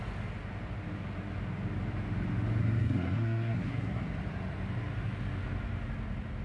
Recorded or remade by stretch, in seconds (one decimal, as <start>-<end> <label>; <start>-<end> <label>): 0.0-2.6 recorded; 2.6-4.0 remade; 4.0-6.4 recorded